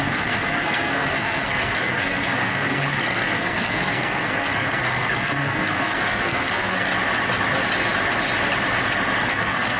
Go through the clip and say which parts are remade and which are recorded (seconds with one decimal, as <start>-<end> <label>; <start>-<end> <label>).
0.0-6.9 remade; 6.9-9.3 recorded; 9.3-9.8 remade